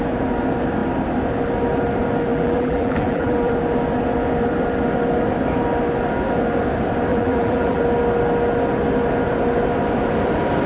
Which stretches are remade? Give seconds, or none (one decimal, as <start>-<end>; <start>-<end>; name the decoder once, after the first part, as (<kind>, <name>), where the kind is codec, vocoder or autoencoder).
2.3-3.5 (vocoder, BigVGAN v2); 7.1-7.8